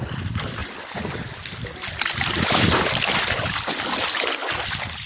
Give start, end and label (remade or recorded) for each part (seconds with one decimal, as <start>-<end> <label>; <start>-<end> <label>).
0.0-5.1 recorded